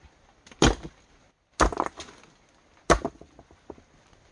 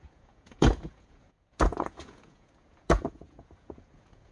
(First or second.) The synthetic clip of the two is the second